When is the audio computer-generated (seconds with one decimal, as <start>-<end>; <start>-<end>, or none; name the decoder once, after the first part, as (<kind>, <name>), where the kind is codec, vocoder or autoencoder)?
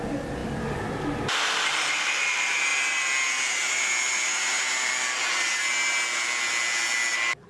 none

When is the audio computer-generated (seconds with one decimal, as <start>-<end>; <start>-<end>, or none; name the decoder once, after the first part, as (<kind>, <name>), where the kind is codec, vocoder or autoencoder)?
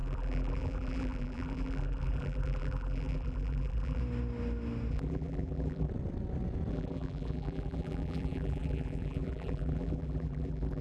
0.0-4.0 (vocoder, BigVGAN v2); 4.9-5.9; 6.7-10.8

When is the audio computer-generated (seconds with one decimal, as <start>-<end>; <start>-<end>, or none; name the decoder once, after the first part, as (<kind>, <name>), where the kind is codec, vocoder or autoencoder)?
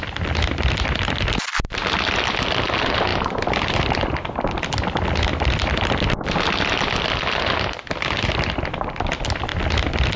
none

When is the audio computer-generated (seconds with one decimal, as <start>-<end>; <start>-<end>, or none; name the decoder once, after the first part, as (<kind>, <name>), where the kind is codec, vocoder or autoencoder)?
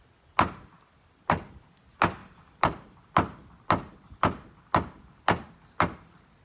2.2-3.0 (vocoder, BigVGAN v2)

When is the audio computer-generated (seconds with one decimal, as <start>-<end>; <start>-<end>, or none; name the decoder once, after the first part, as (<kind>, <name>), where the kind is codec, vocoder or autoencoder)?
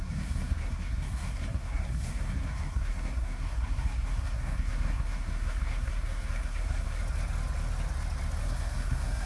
0.0-7.0 (codec, SNAC); 8.4-9.3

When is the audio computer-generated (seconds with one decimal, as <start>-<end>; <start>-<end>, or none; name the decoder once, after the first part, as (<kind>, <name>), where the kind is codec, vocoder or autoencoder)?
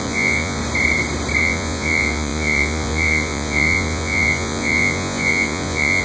0.0-0.6 (vocoder, Vocos); 1.4-6.0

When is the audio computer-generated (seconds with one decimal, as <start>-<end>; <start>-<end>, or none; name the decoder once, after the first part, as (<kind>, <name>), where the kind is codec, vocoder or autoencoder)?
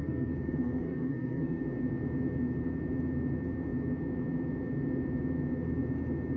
0.0-1.6 (codec, SNAC)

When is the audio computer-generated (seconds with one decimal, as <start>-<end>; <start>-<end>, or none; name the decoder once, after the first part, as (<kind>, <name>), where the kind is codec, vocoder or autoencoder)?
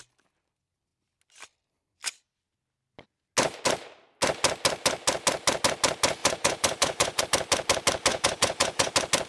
6.2-7.2 (vocoder, Vocos); 8.1-8.9